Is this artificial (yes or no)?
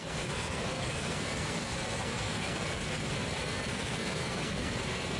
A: yes